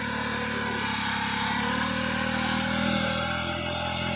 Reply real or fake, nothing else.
real